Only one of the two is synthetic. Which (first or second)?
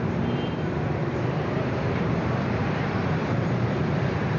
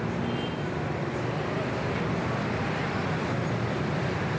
first